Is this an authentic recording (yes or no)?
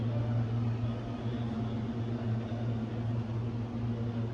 yes